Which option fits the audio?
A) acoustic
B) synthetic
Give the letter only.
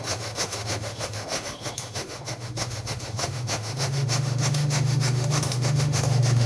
B